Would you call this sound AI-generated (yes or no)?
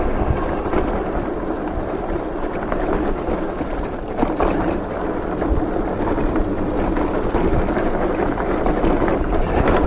no